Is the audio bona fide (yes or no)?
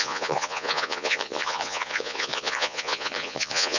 no